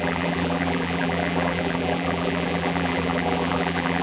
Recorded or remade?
remade